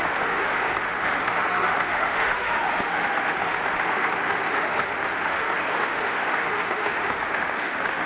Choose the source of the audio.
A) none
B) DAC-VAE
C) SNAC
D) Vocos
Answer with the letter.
B